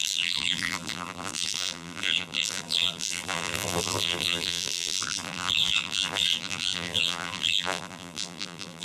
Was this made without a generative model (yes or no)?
no